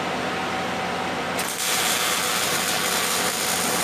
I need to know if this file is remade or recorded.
recorded